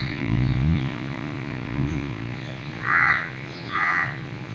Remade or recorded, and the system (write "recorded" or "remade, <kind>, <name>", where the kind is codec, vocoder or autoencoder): remade, vocoder, Vocos